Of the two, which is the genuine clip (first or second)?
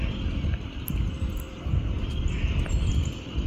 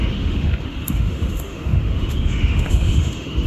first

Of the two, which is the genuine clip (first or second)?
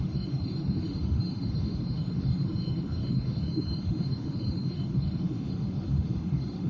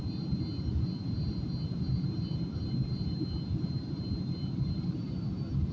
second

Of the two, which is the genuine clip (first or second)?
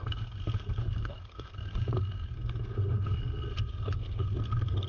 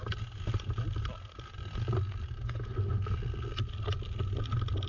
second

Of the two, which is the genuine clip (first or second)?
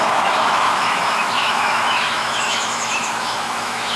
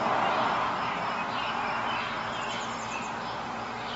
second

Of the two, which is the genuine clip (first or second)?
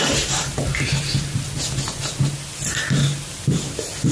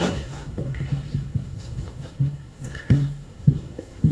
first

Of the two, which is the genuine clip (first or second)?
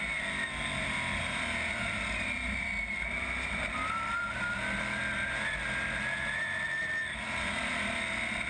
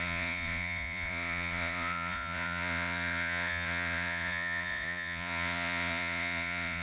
first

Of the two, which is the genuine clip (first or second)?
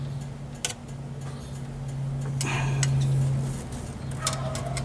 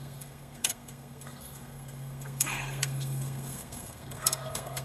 first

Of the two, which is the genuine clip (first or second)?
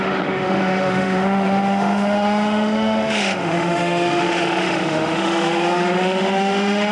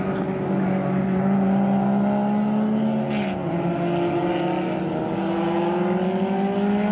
second